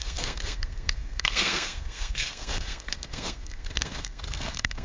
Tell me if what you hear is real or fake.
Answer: fake